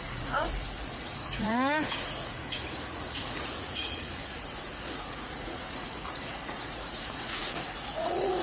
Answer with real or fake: fake